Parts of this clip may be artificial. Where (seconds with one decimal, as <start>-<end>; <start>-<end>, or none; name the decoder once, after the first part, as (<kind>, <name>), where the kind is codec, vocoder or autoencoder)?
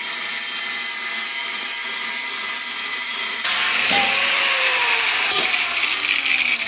2.9-5.8 (vocoder, BigVGAN v2)